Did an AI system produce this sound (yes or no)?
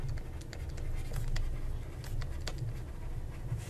no